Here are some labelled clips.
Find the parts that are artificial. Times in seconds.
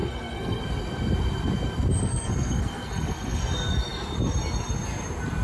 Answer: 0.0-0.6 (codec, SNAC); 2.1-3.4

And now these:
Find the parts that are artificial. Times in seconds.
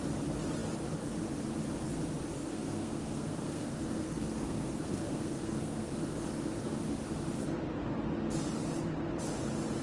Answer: 2.4-5.9 (codec, SNAC)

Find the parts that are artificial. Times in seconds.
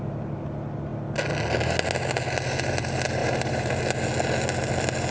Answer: 3.2-3.8 (vocoder, BigVGAN v2)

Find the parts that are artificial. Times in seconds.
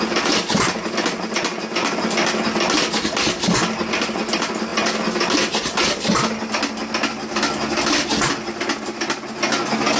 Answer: none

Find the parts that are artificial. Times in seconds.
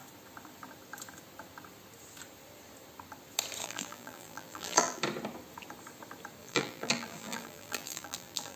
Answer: 3.6-5.0 (vocoder, BigVGAN v2); 6.4-8.6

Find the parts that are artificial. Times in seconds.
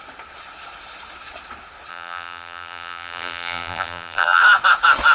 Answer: 1.9-4.4 (vocoder, BigVGAN v2)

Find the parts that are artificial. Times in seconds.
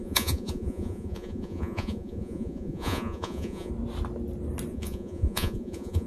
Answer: 0.0-3.7 (vocoder, Vocos); 4.7-6.1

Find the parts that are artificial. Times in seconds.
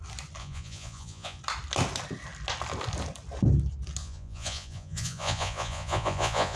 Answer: 0.4-1.4 (vocoder, Vocos); 4.0-6.6